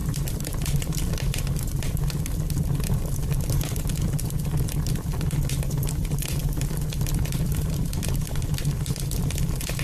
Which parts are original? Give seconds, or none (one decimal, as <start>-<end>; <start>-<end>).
none

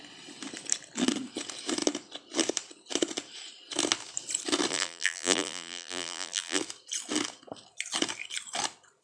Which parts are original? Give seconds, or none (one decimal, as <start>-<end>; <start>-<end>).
0.0-4.7; 6.6-9.0

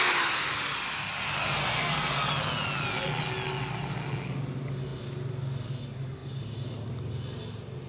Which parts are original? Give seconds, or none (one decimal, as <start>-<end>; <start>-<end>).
0.0-1.7; 2.3-7.9